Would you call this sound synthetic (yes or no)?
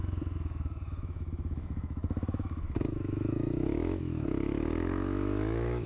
yes